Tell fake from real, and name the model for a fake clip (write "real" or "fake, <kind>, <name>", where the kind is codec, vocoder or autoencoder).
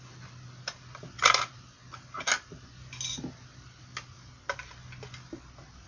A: real